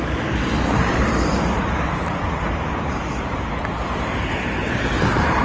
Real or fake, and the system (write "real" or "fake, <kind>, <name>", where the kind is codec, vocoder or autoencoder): fake, vocoder, BigVGAN v2